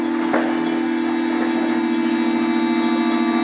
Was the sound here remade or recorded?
recorded